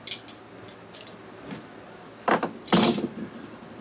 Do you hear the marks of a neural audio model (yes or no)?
no